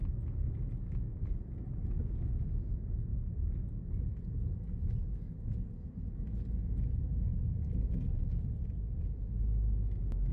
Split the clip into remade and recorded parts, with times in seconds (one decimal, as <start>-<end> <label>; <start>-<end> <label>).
0.0-7.3 recorded; 7.3-8.6 remade; 8.6-10.3 recorded